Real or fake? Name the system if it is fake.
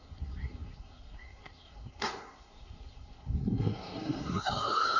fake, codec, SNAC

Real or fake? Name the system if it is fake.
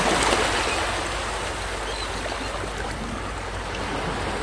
real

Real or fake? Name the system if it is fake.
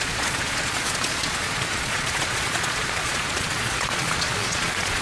fake, vocoder, Vocos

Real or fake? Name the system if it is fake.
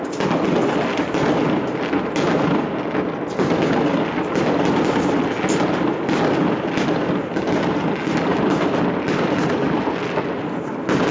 real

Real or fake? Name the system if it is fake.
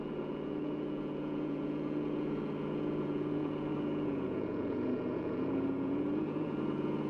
fake, vocoder, Vocos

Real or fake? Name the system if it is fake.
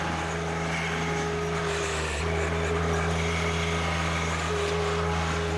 real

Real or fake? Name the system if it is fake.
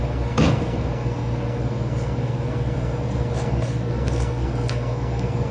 fake, codec, SNAC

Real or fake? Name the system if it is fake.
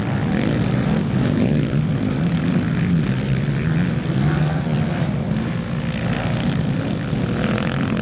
real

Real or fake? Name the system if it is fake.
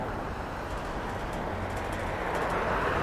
real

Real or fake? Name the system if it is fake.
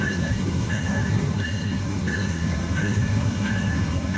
fake, codec, SNAC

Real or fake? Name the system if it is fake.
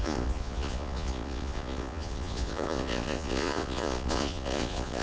fake, vocoder, Vocos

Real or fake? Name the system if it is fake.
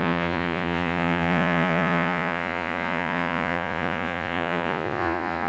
fake, vocoder, Vocos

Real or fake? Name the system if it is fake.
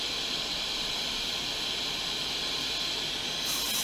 real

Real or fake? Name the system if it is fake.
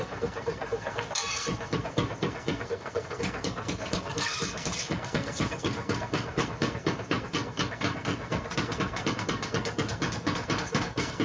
fake, codec, SNAC